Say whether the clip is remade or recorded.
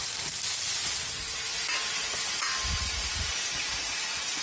recorded